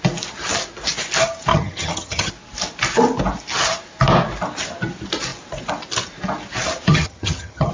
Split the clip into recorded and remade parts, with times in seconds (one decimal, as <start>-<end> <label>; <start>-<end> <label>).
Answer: 0.0-1.5 recorded; 1.5-2.3 remade; 2.3-6.9 recorded; 6.9-7.7 remade